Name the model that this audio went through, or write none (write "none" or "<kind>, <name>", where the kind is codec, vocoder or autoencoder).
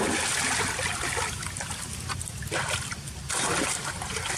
none